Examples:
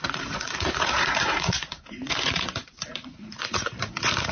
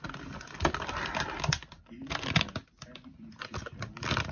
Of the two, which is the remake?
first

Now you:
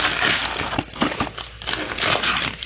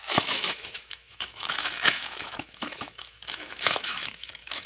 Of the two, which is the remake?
second